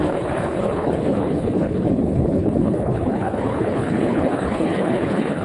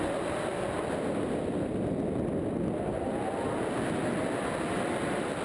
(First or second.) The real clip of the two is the second